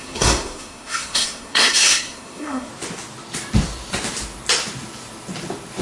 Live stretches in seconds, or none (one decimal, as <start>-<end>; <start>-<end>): 2.7-5.8